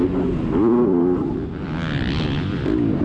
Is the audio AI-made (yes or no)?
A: no